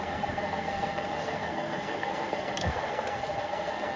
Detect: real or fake fake